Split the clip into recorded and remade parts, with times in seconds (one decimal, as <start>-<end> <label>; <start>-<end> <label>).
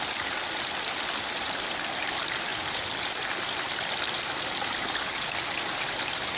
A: 0.0-2.5 recorded; 2.5-6.0 remade; 6.0-6.4 recorded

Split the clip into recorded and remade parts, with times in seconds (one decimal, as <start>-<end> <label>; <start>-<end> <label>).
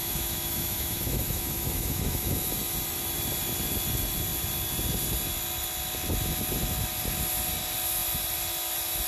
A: 0.0-2.5 remade; 2.5-9.1 recorded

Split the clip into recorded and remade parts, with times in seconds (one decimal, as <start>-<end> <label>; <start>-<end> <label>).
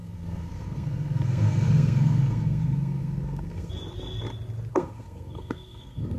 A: 0.0-3.7 remade; 3.7-4.7 recorded; 4.7-6.2 remade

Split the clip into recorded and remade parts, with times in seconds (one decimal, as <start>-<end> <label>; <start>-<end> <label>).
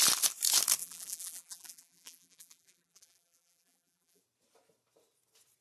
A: 0.0-0.8 recorded; 0.8-4.2 remade; 4.2-5.6 recorded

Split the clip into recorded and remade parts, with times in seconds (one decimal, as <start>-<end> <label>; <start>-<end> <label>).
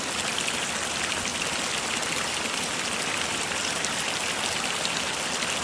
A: 0.0-5.6 recorded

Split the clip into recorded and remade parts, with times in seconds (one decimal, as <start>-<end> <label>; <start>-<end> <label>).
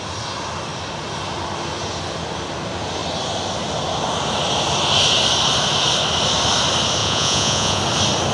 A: 0.0-7.0 recorded; 7.0-7.8 remade; 7.8-8.3 recorded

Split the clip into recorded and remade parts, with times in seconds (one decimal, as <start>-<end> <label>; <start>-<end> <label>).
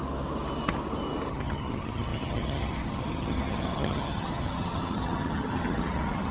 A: 0.0-1.3 recorded; 1.3-6.3 remade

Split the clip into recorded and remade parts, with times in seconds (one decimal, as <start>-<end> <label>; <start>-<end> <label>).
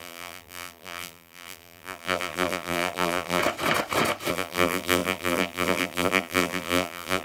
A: 0.0-3.4 remade; 3.4-4.3 recorded; 4.3-7.2 remade